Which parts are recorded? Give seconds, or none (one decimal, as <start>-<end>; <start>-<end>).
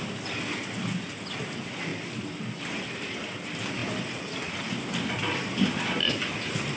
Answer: 0.0-6.8